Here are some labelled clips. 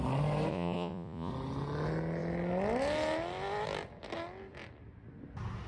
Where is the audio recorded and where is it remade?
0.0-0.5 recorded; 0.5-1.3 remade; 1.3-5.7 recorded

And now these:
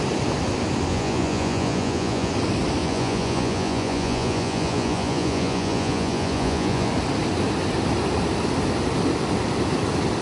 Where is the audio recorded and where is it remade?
0.0-0.9 recorded; 0.9-2.3 remade; 2.3-2.8 recorded; 2.8-6.9 remade; 6.9-10.2 recorded

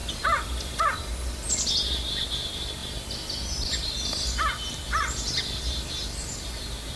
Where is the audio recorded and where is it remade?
0.0-7.0 recorded

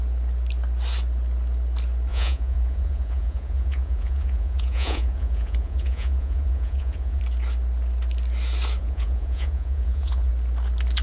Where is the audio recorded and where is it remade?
0.0-2.1 recorded; 2.1-7.2 remade; 7.2-8.8 recorded; 8.8-10.3 remade; 10.3-11.0 recorded

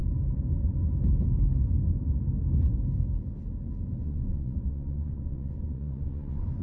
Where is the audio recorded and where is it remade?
0.0-4.0 recorded; 4.0-6.6 remade